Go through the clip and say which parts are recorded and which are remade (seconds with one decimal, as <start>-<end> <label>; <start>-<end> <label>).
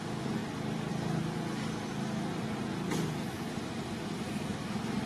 0.0-5.1 recorded